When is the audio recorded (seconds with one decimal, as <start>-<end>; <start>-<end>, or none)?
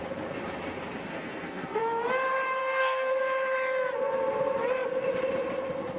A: 0.0-1.1; 1.8-2.6; 3.2-6.0